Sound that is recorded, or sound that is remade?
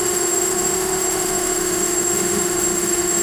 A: remade